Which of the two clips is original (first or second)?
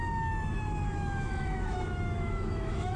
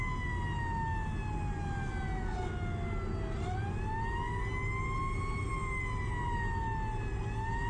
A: second